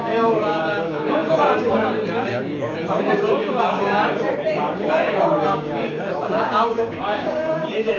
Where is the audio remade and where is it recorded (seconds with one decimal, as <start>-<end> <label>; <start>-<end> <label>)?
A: 0.0-4.0 remade; 4.0-4.5 recorded; 4.5-8.0 remade